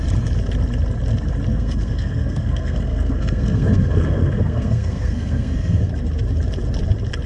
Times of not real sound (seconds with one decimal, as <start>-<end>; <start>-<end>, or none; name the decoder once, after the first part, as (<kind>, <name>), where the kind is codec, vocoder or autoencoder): 1.5-5.9 (codec, SNAC)